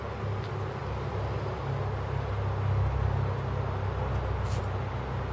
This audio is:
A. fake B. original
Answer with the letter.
B